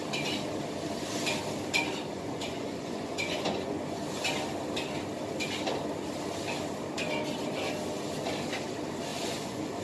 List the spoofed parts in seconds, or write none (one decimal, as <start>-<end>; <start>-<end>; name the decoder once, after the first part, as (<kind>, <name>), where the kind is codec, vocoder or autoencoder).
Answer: 2.1-4.0 (vocoder, Vocos); 9.1-9.8